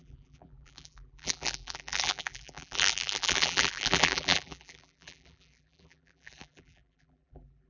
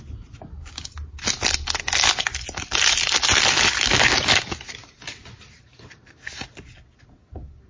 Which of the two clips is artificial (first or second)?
first